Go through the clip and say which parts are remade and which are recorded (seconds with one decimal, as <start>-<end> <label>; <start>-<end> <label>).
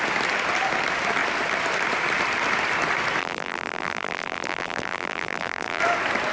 0.0-3.2 recorded; 3.2-5.8 remade; 5.8-6.3 recorded